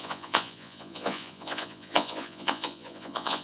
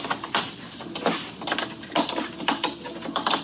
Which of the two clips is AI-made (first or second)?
first